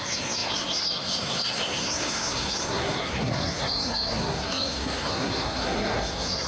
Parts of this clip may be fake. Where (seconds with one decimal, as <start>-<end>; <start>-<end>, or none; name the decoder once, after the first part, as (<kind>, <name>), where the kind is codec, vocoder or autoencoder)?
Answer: 0.0-6.5 (codec, SNAC)